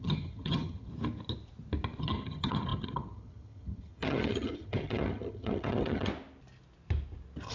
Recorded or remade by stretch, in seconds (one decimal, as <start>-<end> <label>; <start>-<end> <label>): 0.0-0.9 remade; 0.9-2.0 recorded; 2.0-6.1 remade; 6.1-7.5 recorded